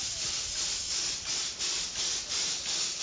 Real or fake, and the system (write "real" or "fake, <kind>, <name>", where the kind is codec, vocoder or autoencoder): real